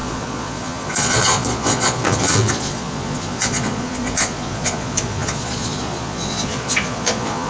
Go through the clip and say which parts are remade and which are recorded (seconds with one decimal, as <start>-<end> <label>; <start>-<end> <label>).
0.0-7.5 remade